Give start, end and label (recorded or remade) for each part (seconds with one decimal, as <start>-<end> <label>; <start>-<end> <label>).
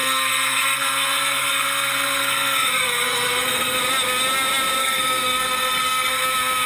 0.0-3.8 remade; 3.8-4.8 recorded; 4.8-6.1 remade; 6.1-6.7 recorded